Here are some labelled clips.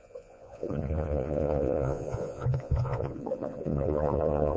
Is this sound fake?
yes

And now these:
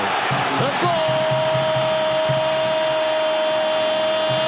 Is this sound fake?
no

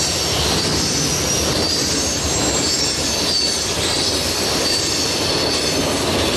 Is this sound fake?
no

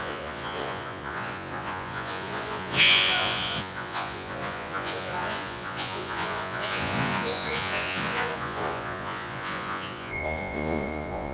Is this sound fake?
yes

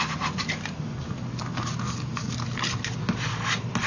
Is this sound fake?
no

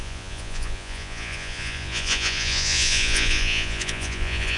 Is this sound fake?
yes